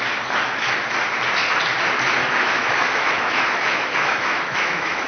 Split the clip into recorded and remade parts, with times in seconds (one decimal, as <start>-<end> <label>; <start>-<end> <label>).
0.0-2.2 recorded; 2.2-5.1 remade